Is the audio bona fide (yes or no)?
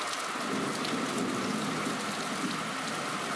yes